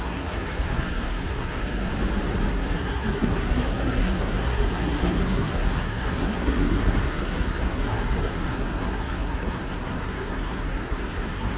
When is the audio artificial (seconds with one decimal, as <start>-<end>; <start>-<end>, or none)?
0.0-1.9; 2.5-11.6